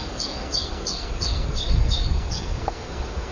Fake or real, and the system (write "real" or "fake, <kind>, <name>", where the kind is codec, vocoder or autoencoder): fake, codec, SNAC